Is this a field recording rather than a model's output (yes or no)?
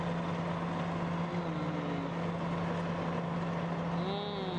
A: yes